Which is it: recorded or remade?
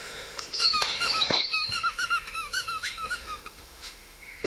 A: remade